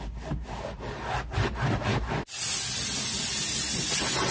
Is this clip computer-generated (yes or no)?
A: no